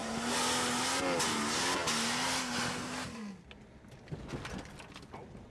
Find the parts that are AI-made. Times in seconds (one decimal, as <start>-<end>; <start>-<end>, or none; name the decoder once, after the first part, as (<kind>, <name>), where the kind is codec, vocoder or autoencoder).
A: none